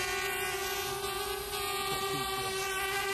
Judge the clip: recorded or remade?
recorded